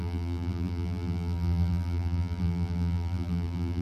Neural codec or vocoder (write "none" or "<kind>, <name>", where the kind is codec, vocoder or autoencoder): vocoder, BigVGAN v2